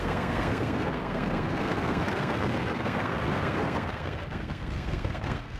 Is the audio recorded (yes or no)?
no